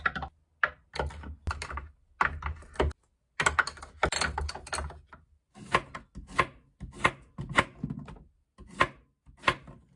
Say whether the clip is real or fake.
real